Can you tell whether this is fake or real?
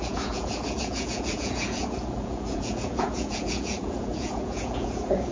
fake